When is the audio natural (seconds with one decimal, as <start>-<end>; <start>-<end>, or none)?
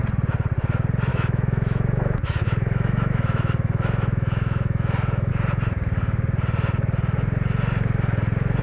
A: 0.0-1.1; 5.3-8.6